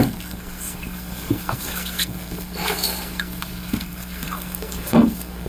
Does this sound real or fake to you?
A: fake